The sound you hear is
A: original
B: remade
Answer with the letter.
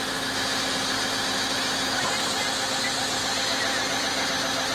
A